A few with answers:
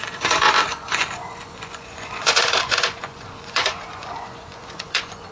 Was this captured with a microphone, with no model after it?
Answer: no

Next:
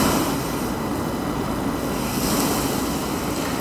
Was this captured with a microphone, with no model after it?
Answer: yes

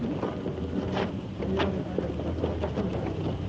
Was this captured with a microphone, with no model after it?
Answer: yes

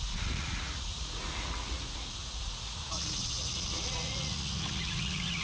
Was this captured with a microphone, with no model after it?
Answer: no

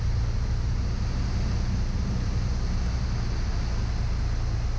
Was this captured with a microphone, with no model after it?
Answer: yes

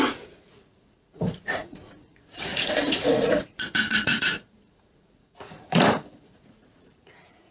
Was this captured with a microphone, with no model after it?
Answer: no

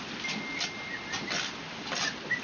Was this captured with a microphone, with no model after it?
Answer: yes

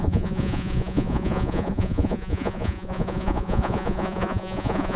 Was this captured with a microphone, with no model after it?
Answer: no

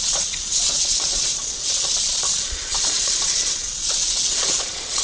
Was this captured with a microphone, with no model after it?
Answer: no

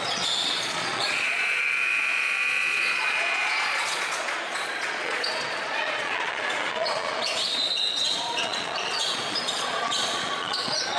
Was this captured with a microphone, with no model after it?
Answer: no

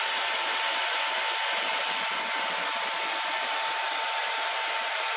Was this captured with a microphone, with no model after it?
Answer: yes